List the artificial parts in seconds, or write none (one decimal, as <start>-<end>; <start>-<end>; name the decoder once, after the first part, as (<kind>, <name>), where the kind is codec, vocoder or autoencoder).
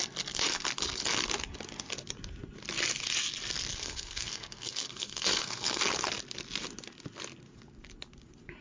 3.7-5.8 (codec, SNAC)